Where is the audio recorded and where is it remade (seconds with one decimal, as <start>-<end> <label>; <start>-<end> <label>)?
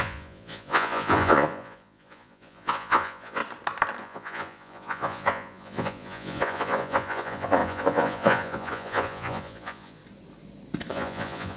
0.0-3.4 remade; 3.4-4.0 recorded; 4.0-10.0 remade; 10.0-10.9 recorded; 10.9-11.6 remade